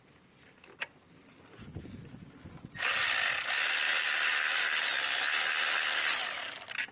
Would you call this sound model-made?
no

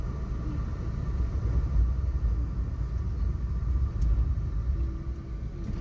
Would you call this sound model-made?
no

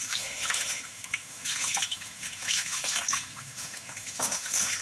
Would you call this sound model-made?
yes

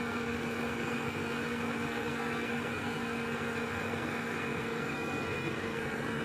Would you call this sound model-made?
yes